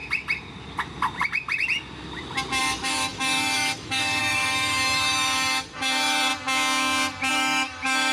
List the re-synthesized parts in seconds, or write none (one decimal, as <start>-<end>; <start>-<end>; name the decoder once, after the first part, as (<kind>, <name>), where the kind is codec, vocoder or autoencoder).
2.6-6.3 (autoencoder, DAC-VAE); 7.3-8.1